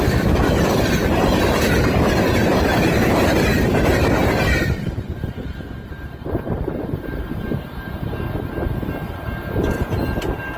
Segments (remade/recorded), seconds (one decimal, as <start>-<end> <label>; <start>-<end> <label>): 0.0-1.0 recorded; 1.0-2.1 remade; 2.1-2.7 recorded; 2.7-3.8 remade; 3.8-4.2 recorded; 4.2-8.1 remade; 8.1-10.6 recorded